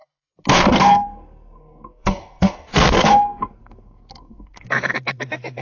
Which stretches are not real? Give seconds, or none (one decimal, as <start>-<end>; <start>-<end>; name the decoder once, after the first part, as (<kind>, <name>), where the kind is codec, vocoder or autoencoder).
0.5-5.6 (codec, SNAC)